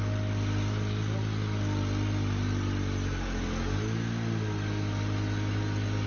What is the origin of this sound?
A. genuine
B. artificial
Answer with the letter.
A